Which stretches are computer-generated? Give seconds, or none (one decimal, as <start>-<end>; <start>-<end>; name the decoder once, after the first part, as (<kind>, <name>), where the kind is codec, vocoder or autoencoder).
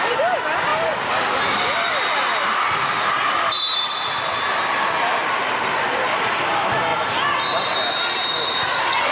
0.0-0.7 (vocoder, BigVGAN v2); 2.4-4.3; 5.6-6.9